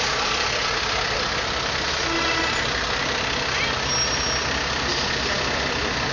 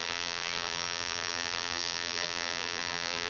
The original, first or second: first